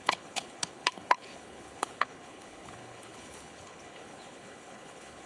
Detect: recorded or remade remade